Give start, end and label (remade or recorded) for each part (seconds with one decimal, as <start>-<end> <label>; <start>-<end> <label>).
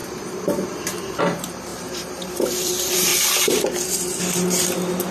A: 0.0-3.1 remade; 3.1-5.1 recorded